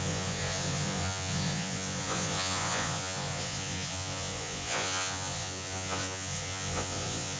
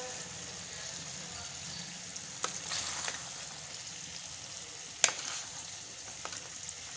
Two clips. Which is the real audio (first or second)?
second